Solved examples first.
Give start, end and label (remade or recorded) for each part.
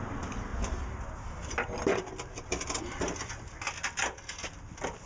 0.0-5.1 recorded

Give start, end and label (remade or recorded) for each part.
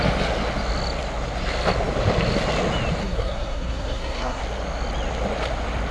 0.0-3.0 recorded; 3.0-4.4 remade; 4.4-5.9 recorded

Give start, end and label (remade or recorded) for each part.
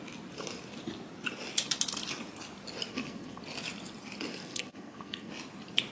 0.0-2.9 recorded; 2.9-3.4 remade; 3.4-4.3 recorded; 4.3-5.3 remade; 5.3-5.9 recorded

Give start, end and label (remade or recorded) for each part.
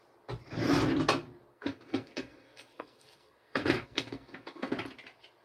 0.0-1.5 recorded; 1.5-4.7 remade; 4.7-5.4 recorded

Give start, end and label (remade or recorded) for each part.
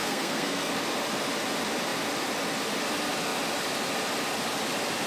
0.0-0.7 remade; 0.7-5.1 recorded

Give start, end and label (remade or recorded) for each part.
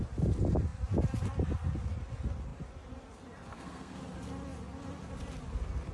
0.0-3.5 recorded; 3.5-4.0 remade; 4.0-5.9 recorded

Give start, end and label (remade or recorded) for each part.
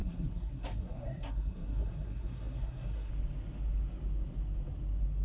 0.0-3.1 remade; 3.1-5.2 recorded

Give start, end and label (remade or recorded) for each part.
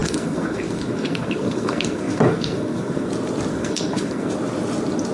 0.0-3.1 remade; 3.1-3.5 recorded; 3.5-4.3 remade; 4.3-5.1 recorded